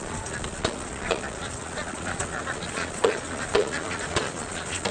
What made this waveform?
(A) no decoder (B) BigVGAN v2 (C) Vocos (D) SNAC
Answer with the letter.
C